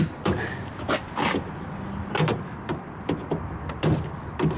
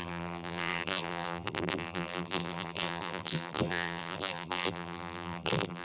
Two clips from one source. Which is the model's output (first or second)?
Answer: second